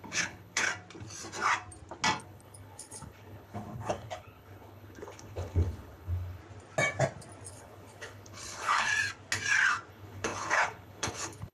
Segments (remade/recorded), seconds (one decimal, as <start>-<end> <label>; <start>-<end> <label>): 0.0-0.7 remade; 0.7-2.2 recorded; 2.2-6.4 remade; 6.4-7.5 recorded; 7.5-8.9 remade; 8.9-9.9 recorded; 9.9-11.5 remade